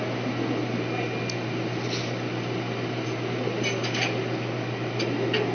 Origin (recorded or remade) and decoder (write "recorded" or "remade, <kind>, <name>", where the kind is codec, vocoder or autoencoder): recorded